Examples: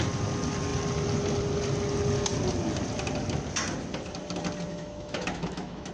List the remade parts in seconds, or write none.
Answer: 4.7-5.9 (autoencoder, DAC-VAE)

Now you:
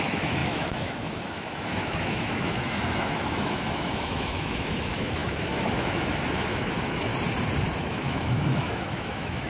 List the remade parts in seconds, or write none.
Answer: 0.0-7.1 (autoencoder, DAC-VAE); 7.8-9.5